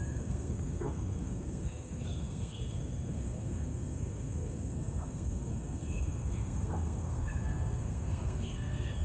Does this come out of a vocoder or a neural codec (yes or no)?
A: yes